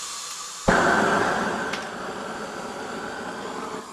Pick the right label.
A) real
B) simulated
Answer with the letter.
A